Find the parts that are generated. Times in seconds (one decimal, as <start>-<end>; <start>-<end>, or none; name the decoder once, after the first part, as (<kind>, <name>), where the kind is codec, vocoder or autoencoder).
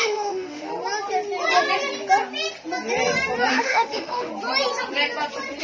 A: 0.0-0.7 (autoencoder, DAC-VAE); 3.5-4.3